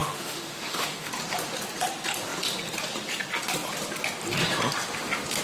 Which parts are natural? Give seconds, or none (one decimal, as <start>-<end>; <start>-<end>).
1.1-5.4